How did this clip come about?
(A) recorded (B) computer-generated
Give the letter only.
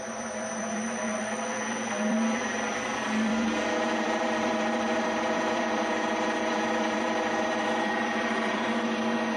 B